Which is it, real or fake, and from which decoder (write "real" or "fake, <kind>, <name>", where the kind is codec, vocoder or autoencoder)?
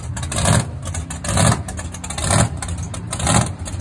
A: real